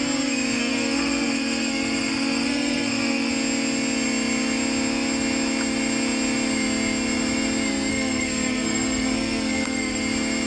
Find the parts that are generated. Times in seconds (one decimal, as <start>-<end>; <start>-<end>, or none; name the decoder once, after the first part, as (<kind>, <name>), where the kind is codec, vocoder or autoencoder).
0.6-3.3 (codec, SNAC); 7.9-10.0